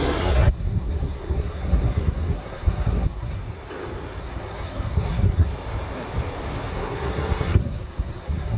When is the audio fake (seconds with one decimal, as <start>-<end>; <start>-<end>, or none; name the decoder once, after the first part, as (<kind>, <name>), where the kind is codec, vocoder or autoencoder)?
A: 0.0-3.4 (codec, SNAC); 4.2-5.5; 6.7-8.6